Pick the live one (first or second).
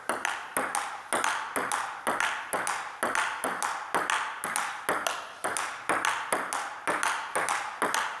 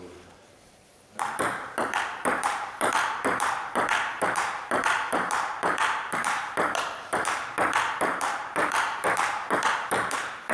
first